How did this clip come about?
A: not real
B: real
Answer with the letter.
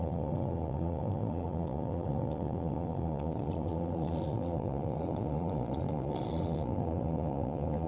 A